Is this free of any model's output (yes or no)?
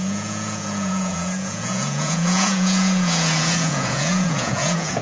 no